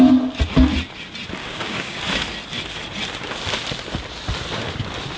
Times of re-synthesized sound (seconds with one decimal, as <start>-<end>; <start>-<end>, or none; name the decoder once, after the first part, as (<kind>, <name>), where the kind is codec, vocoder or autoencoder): 1.4-2.0 (codec, DAC)